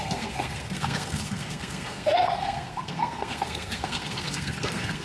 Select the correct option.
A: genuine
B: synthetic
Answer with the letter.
B